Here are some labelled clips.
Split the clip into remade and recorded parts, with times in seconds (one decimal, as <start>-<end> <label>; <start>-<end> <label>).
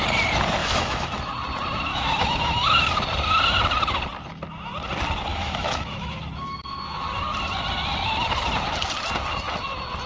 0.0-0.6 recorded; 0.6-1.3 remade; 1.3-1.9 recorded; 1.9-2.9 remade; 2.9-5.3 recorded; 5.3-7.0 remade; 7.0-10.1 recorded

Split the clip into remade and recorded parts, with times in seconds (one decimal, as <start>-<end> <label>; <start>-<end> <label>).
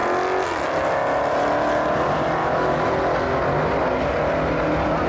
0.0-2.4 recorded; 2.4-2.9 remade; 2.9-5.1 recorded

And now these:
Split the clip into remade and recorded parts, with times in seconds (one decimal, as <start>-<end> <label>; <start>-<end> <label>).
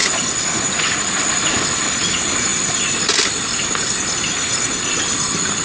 0.0-5.6 recorded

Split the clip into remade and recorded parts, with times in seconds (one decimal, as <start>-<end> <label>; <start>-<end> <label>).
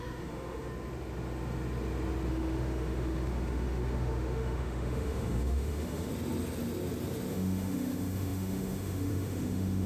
0.0-0.7 remade; 0.7-2.3 recorded; 2.3-6.1 remade; 6.1-7.3 recorded; 7.3-9.9 remade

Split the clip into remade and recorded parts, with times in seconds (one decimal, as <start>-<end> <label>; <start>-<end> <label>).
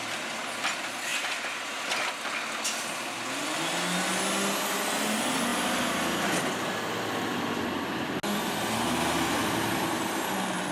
0.0-10.7 recorded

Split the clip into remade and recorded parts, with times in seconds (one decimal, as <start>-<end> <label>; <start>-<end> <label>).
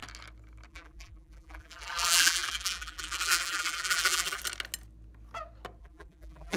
0.0-0.7 recorded; 0.7-4.4 remade; 4.4-5.8 recorded; 5.8-6.6 remade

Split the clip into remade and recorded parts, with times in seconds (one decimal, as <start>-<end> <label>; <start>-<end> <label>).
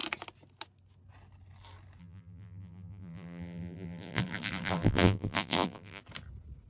0.0-2.0 recorded; 2.0-6.0 remade; 6.0-6.7 recorded